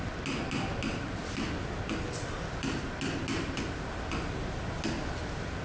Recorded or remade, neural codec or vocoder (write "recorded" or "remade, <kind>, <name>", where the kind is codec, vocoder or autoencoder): recorded